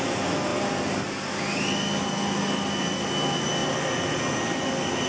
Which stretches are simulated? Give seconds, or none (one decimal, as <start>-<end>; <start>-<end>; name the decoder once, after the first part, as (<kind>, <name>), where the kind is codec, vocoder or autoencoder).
none